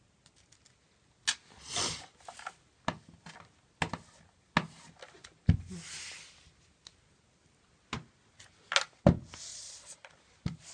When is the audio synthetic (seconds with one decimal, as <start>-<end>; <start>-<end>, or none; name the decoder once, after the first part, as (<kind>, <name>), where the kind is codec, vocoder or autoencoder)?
9.5-10.1 (vocoder, Vocos)